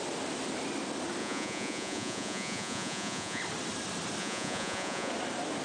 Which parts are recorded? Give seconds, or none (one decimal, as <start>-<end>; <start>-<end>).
0.0-1.2; 3.4-4.2; 5.1-5.6